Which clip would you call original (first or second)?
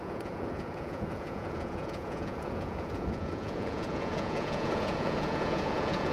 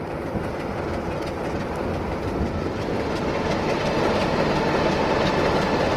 second